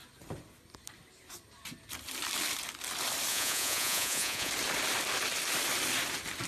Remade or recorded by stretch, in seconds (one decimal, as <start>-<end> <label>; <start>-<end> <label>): 0.0-3.3 recorded; 3.3-4.5 remade; 4.5-6.5 recorded